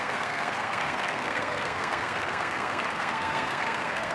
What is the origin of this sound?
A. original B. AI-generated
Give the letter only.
B